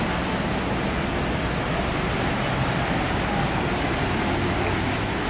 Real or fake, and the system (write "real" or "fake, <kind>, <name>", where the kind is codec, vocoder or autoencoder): real